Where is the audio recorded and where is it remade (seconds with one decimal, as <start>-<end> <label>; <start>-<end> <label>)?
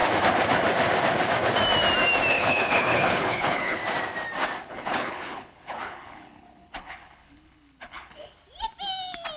0.0-2.3 recorded; 2.3-3.8 remade; 3.8-4.7 recorded; 4.7-8.4 remade; 8.4-9.4 recorded